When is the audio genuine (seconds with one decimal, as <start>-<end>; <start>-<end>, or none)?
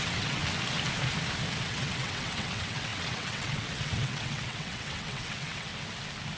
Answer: 0.4-1.6; 5.7-6.4